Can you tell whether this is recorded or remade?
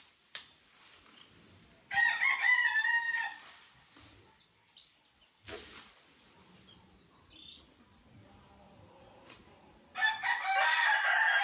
remade